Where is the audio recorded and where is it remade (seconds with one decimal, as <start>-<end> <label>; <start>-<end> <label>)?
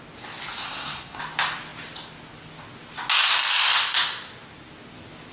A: 0.0-0.6 recorded; 0.6-1.2 remade; 1.2-5.3 recorded